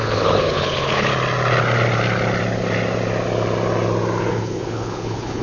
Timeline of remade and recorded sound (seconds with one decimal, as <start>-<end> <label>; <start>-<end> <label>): 0.0-1.1 remade; 1.1-4.3 recorded; 4.3-5.4 remade